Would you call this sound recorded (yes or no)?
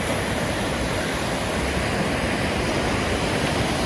yes